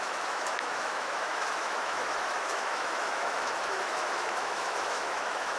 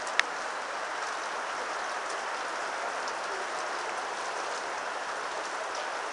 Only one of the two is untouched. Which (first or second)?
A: second